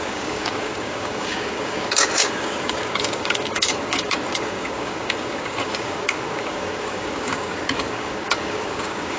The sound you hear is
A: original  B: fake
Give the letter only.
B